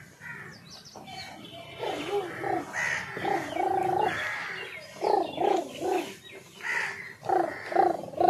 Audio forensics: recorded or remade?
recorded